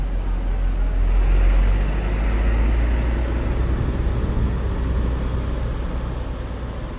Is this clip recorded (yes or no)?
yes